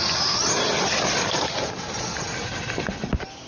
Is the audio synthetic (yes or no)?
no